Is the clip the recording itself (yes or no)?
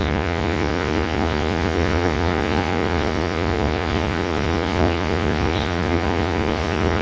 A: no